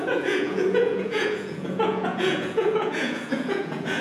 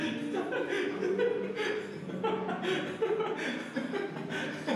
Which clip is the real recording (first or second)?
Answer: second